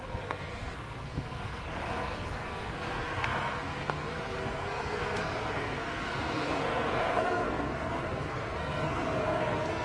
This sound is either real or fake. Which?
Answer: fake